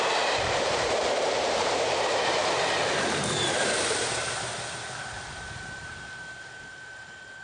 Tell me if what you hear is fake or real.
fake